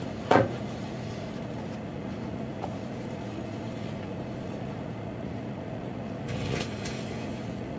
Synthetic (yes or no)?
yes